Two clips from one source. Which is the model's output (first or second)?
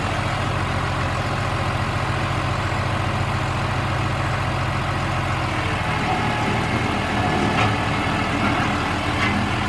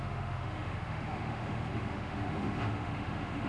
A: second